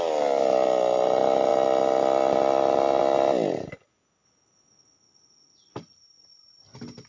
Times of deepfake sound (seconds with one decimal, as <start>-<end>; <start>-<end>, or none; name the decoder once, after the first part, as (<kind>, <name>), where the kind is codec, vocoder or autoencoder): none